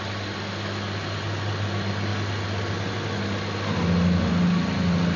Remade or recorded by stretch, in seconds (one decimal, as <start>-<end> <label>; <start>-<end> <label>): 0.0-5.2 recorded